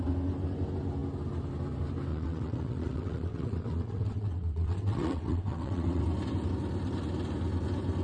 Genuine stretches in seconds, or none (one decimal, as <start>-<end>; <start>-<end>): 0.0-2.1; 6.0-8.0